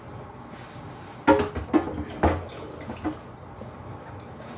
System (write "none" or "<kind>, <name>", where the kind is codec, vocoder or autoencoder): none